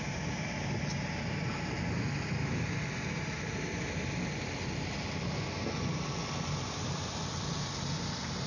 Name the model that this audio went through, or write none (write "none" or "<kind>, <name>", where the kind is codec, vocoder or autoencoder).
none